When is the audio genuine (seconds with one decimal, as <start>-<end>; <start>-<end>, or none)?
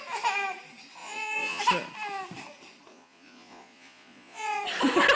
0.0-1.0; 1.6-2.9; 4.6-5.2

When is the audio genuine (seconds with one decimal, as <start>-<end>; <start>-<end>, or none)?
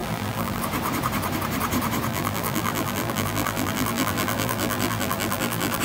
0.6-2.1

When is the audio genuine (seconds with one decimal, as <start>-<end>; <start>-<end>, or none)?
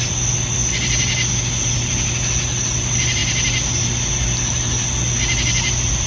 0.0-6.1